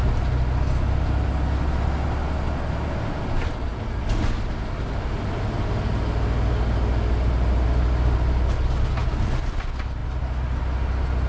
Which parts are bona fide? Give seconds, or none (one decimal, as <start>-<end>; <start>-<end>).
0.0-11.3